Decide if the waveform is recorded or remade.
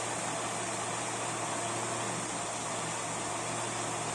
recorded